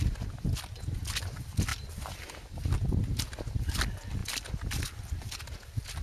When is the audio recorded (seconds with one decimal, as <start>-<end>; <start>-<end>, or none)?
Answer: 0.0-4.2; 4.9-6.0